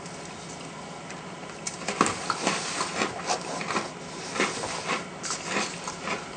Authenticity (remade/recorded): recorded